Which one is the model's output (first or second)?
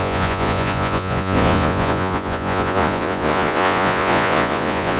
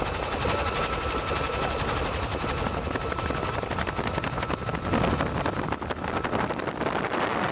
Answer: first